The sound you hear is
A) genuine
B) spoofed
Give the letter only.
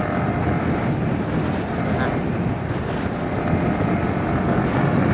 A